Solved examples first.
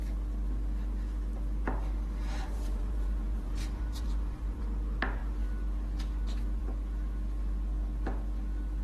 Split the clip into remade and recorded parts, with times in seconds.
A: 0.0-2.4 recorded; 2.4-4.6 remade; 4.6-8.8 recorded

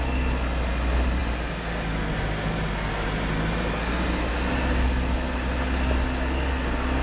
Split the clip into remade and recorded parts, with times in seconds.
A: 0.0-7.0 recorded